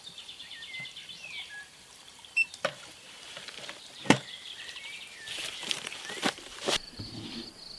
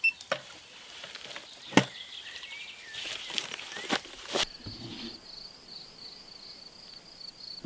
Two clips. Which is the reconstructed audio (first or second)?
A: first